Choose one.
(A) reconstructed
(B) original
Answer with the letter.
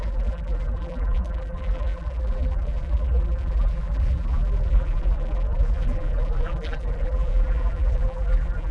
A